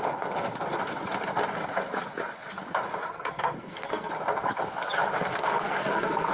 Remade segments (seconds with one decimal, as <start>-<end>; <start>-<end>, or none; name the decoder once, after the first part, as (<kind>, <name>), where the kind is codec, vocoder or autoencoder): 3.1-4.1 (codec, SNAC); 5.3-6.3